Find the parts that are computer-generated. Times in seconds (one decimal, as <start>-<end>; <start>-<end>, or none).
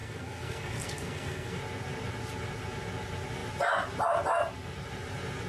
0.0-1.6